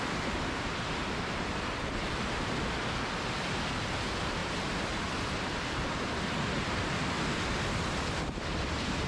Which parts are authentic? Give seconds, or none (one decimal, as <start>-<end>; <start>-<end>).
0.0-4.4; 6.4-9.1